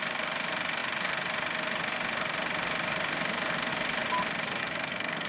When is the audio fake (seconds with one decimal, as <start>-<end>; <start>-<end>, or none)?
4.6-5.3